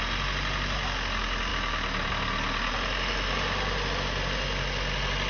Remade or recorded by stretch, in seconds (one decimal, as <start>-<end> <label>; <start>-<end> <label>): 0.0-5.3 recorded